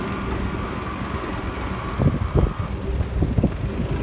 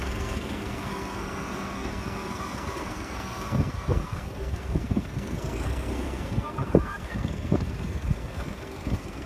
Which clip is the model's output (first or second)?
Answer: second